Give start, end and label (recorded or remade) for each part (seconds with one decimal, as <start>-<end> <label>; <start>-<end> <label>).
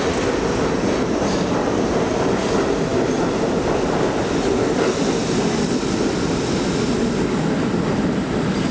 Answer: 0.0-8.7 recorded